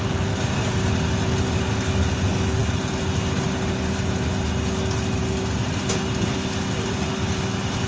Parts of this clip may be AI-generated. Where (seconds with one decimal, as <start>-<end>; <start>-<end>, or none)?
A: none